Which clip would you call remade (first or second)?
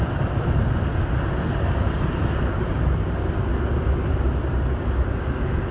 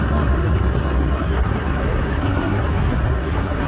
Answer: second